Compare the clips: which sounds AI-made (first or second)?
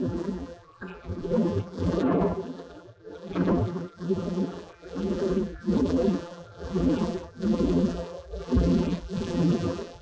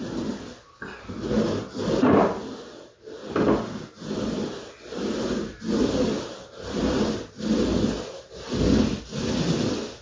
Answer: first